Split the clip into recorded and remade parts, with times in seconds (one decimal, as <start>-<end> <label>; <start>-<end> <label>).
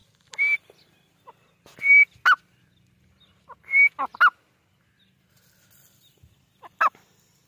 0.0-7.5 recorded